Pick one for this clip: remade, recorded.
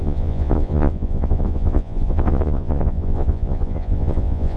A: remade